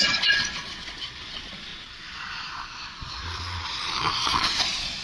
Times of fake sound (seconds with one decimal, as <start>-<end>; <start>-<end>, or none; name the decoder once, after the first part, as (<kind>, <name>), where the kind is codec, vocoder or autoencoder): 0.0-5.0 (vocoder, Vocos)